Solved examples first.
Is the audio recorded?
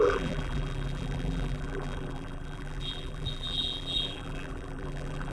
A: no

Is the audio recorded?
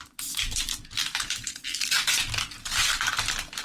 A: yes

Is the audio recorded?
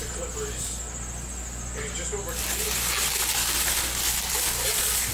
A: yes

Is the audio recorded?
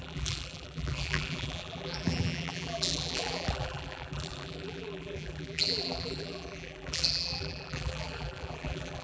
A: no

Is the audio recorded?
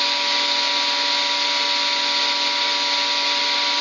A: yes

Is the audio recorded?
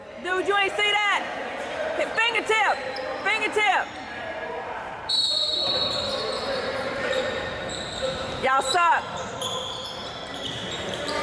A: no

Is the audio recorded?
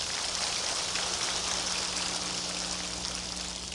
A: yes